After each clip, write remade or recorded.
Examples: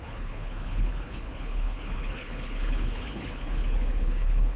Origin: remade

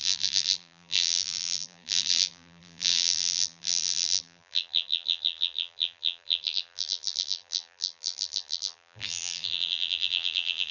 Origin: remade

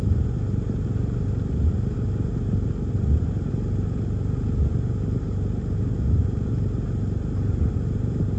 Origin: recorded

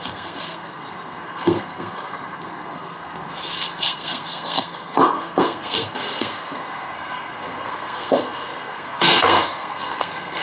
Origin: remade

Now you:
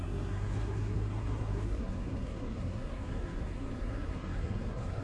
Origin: remade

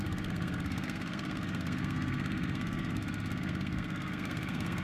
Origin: remade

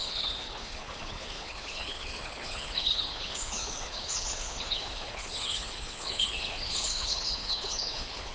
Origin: remade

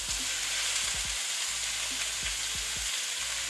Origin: recorded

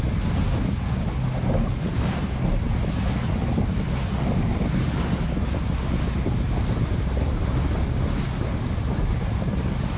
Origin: recorded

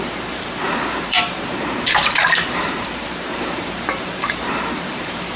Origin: remade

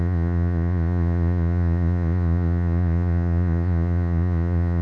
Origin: remade